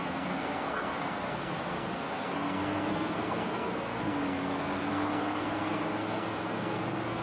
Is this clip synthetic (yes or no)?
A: yes